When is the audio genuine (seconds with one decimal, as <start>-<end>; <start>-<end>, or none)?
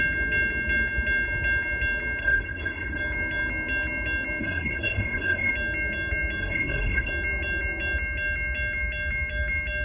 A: 0.0-2.2; 3.0-4.4; 5.5-6.4; 7.1-9.8